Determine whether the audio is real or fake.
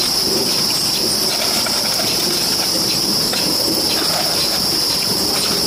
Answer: real